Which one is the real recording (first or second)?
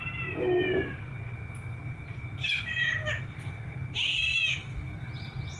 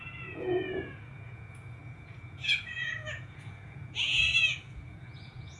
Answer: first